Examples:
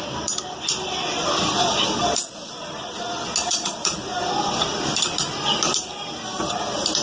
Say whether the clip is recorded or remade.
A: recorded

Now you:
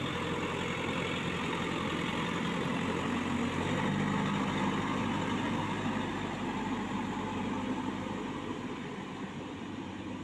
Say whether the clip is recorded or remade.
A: recorded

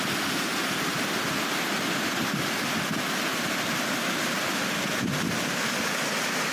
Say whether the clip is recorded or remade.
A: recorded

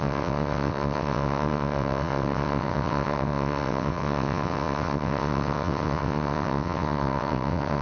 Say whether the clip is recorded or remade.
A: remade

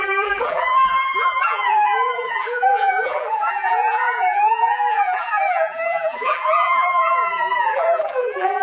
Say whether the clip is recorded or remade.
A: remade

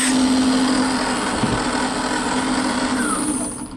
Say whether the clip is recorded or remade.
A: recorded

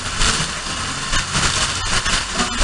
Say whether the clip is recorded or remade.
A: recorded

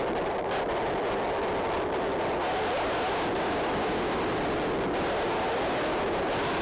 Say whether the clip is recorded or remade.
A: recorded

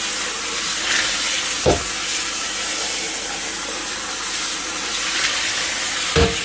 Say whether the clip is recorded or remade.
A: recorded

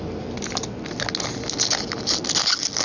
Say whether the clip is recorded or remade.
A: recorded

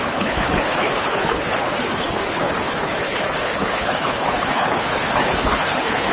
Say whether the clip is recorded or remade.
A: remade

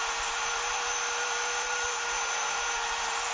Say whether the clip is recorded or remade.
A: remade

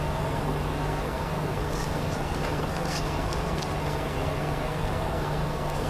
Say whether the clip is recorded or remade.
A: remade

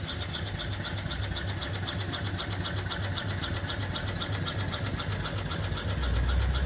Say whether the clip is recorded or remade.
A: recorded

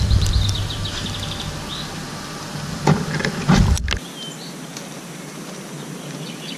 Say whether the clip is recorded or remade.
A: recorded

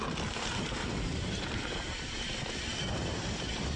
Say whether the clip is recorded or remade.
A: recorded